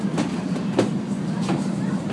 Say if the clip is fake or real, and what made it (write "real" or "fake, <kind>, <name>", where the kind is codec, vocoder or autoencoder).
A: real